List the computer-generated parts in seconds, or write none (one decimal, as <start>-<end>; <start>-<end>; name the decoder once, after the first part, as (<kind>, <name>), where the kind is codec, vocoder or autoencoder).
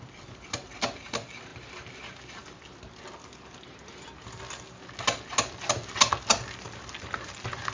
none